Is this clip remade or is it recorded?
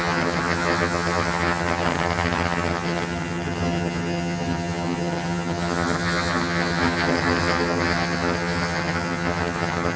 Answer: remade